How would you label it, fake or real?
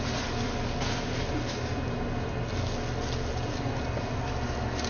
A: real